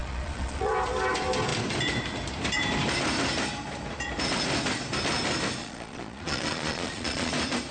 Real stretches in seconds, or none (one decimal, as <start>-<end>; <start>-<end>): 0.7-5.6; 7.3-7.7